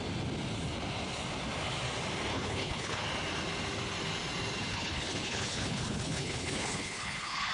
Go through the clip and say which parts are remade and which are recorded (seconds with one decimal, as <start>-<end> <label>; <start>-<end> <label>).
0.0-2.3 recorded; 2.3-3.0 remade; 3.0-4.7 recorded; 4.7-7.5 remade

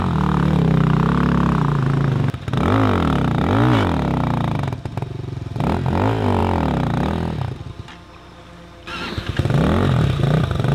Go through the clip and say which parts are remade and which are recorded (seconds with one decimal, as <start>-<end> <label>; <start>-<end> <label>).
0.0-10.7 recorded

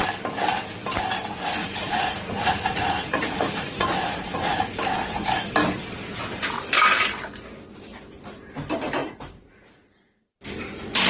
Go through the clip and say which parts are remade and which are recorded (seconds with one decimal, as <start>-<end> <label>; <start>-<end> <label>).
0.0-1.6 recorded; 1.6-4.6 remade; 4.6-9.0 recorded; 9.0-10.3 remade; 10.3-11.1 recorded

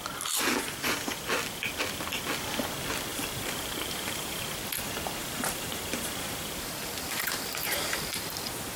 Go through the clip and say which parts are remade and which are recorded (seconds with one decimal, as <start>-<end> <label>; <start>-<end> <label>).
0.0-3.1 recorded; 3.1-4.4 remade; 4.4-5.2 recorded; 5.2-8.3 remade; 8.3-8.8 recorded

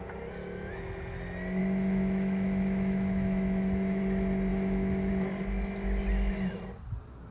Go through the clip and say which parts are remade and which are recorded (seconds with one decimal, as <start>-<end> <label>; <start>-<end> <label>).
0.0-1.6 recorded; 1.6-4.0 remade; 4.0-4.5 recorded; 4.5-5.1 remade; 5.1-7.3 recorded